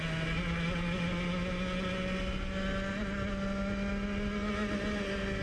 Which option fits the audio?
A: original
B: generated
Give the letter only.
A